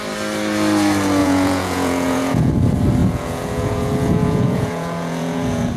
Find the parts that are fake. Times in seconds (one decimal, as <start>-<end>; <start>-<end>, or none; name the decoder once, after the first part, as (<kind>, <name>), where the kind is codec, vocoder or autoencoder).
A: 1.2-2.5 (vocoder, Vocos); 3.0-5.8